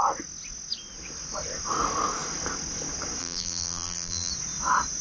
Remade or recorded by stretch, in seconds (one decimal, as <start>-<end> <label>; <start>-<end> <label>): 0.0-3.2 recorded; 3.2-4.3 remade; 4.3-5.0 recorded